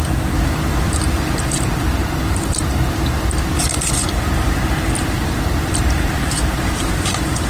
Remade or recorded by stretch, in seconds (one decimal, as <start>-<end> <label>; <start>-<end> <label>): 0.0-0.7 recorded; 0.7-3.8 remade; 3.8-5.0 recorded; 5.0-7.1 remade; 7.1-7.5 recorded